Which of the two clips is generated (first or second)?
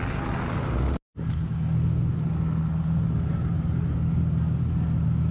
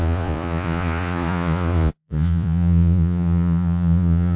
second